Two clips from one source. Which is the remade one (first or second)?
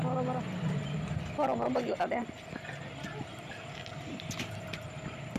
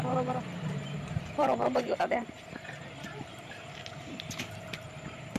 second